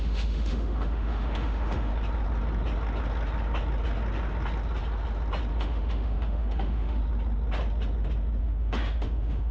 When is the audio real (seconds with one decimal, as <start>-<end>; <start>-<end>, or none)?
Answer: 1.9-5.6; 7.0-8.4

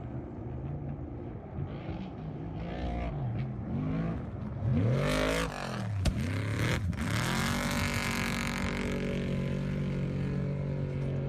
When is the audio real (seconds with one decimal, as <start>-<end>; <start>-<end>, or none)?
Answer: 0.0-11.3

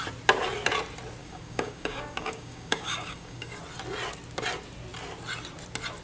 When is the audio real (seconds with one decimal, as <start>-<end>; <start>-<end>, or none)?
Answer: 0.0-1.2; 3.6-6.0

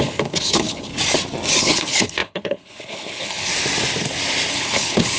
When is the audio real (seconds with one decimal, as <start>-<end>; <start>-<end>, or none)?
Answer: 0.9-1.6; 3.5-4.5

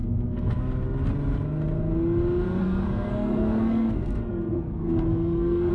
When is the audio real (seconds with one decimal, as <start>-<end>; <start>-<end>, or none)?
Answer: 0.6-2.6